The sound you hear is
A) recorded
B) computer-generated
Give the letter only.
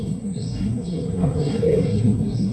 B